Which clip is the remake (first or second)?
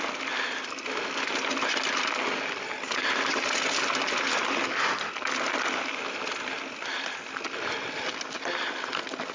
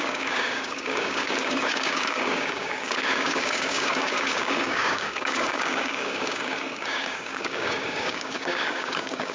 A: second